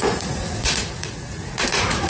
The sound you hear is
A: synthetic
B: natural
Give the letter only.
A